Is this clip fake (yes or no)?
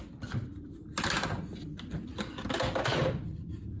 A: no